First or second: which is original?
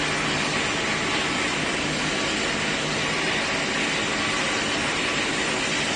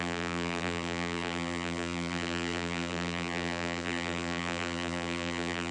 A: first